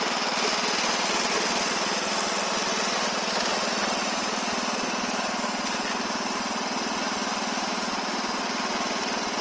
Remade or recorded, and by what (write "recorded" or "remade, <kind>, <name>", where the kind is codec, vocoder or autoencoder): recorded